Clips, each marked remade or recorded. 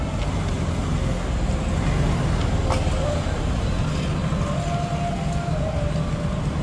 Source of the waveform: recorded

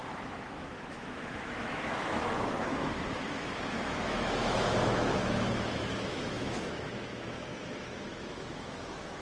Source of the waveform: remade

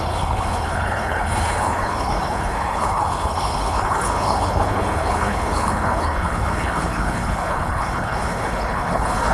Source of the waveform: remade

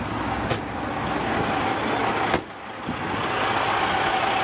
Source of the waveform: recorded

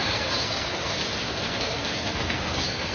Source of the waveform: remade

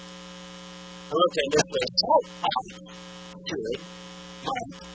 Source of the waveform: recorded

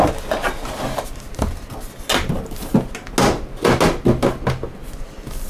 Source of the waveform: recorded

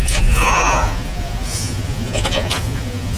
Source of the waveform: remade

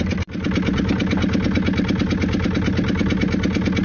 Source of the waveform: recorded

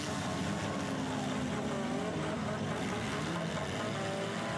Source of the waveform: recorded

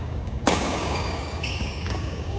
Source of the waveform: remade